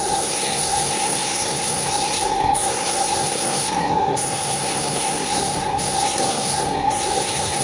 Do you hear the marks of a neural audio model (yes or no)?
yes